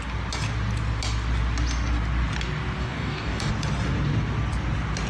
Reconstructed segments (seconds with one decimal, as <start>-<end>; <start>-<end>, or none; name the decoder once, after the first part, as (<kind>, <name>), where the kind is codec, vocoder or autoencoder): 2.8-3.5 (codec, DAC)